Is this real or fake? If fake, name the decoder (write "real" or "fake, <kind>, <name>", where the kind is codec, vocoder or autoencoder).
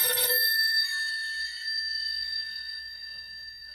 fake, codec, SNAC